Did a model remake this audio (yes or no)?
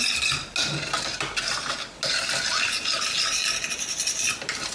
no